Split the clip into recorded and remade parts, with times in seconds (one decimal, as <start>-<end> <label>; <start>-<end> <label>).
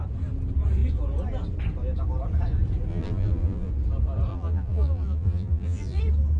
0.0-2.9 recorded; 2.9-3.7 remade; 3.7-4.3 recorded; 4.3-6.0 remade; 6.0-6.4 recorded